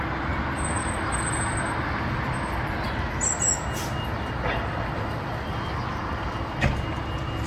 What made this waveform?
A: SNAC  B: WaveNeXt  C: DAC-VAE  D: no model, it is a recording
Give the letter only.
D